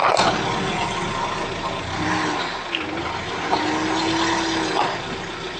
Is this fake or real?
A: real